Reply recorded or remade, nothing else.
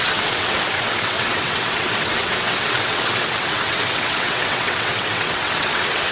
remade